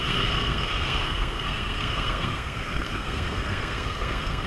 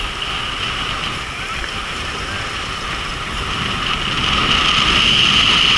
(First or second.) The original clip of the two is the second